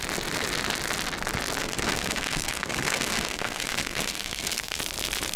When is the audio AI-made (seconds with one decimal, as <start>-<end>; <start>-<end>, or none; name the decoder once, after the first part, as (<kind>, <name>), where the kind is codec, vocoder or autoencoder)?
1.6-4.8 (codec, SNAC)